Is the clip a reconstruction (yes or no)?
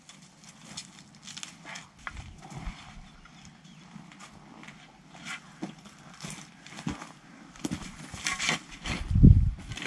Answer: no